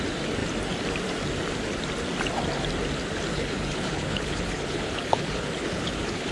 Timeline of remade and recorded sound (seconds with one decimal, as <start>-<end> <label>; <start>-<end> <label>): 0.0-3.3 recorded; 3.3-6.3 remade